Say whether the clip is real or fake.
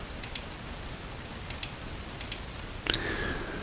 real